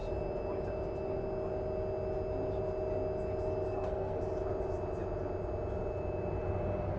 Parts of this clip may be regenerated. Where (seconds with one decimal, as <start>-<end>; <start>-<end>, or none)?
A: 3.7-4.2